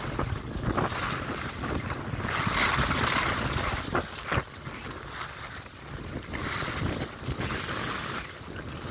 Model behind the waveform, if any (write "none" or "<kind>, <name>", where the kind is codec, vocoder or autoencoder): none